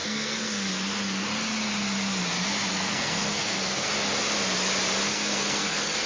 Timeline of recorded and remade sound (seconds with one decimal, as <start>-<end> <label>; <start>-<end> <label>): 0.0-0.7 remade; 0.7-2.7 recorded; 2.7-3.9 remade; 3.9-5.1 recorded; 5.1-6.1 remade